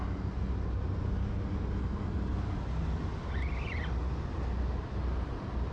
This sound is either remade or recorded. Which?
recorded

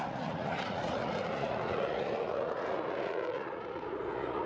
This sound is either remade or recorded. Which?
remade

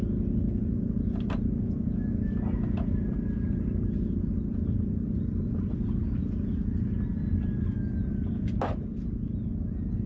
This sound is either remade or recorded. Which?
recorded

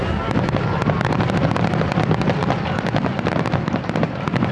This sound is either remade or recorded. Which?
recorded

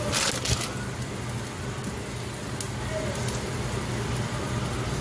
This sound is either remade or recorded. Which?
recorded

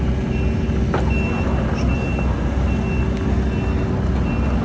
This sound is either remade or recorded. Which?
recorded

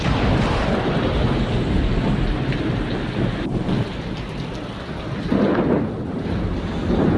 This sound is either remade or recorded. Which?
recorded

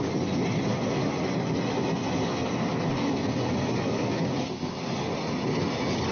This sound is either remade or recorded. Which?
recorded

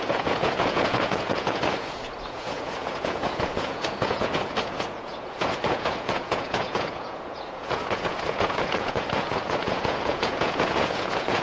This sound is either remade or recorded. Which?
remade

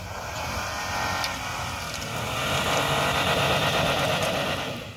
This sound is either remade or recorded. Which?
recorded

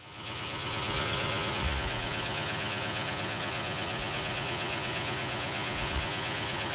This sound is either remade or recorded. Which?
remade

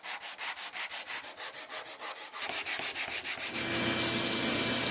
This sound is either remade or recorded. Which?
recorded